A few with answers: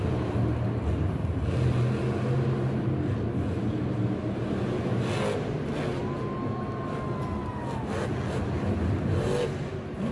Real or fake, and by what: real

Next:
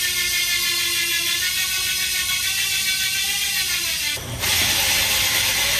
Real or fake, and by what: real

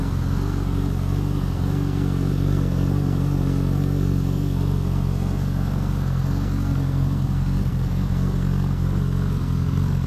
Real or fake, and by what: fake, codec, SNAC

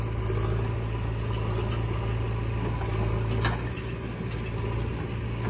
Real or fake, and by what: real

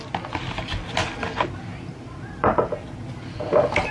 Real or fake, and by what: real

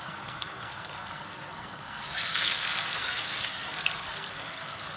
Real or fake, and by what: fake, codec, SNAC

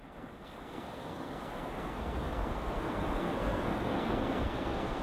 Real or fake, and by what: fake, codec, SNAC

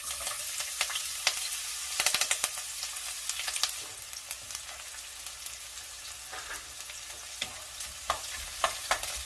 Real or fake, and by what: real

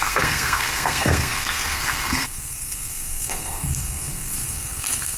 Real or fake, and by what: fake, codec, SNAC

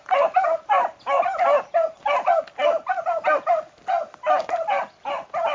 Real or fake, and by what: real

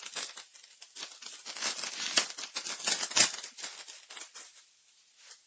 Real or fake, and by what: real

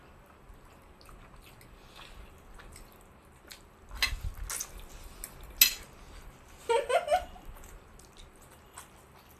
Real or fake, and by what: real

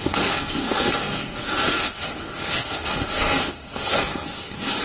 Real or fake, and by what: fake, codec, SNAC